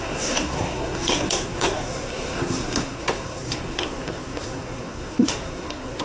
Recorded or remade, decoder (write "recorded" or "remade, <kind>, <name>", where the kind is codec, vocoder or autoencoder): remade, codec, SNAC